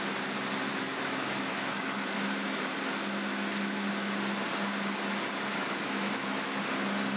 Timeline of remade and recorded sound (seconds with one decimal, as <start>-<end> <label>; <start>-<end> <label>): 0.0-0.7 recorded; 0.7-1.8 remade; 1.8-3.3 recorded; 3.3-3.9 remade; 3.9-5.5 recorded; 5.5-6.6 remade; 6.6-7.2 recorded